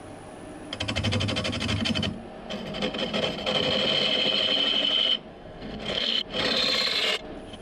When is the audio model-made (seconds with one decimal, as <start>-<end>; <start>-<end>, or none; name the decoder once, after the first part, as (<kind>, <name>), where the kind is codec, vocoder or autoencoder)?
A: 5.3-6.2 (codec, SNAC)